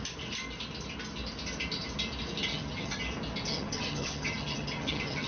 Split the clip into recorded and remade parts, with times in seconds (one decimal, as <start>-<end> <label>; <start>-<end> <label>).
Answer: 0.0-2.5 recorded; 2.5-3.0 remade; 3.0-3.5 recorded; 3.5-5.3 remade